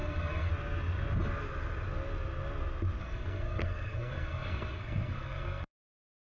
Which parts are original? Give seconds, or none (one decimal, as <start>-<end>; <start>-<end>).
0.5-3.0; 5.9-6.4